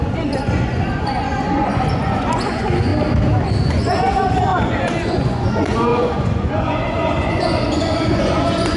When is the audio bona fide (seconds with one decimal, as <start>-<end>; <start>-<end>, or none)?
2.9-3.6